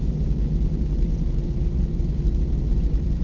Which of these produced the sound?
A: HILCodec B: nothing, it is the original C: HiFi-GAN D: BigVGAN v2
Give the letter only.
B